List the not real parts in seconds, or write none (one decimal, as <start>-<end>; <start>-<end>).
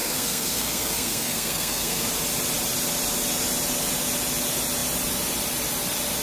0.0-2.1